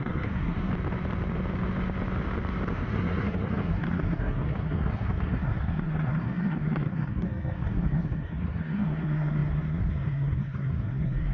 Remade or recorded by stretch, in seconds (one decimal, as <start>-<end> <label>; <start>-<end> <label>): 0.0-0.7 remade; 0.7-2.7 recorded; 2.7-11.3 remade

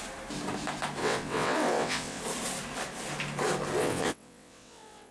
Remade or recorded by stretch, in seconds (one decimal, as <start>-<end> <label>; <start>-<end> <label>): 0.0-1.0 recorded; 1.0-2.2 remade; 2.2-3.8 recorded; 3.8-5.1 remade